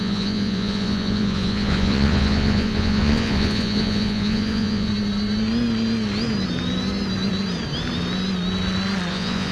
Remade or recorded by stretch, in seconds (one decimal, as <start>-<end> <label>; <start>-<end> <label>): 0.0-4.9 remade; 4.9-9.1 recorded; 9.1-9.5 remade